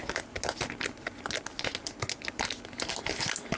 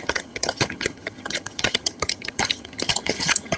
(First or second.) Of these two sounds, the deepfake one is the second